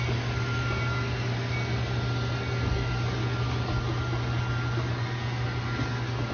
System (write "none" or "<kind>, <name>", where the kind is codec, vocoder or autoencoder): none